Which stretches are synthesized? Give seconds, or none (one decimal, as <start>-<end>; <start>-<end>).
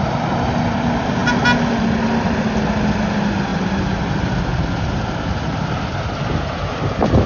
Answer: 3.5-4.9